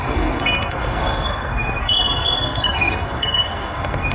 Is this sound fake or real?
fake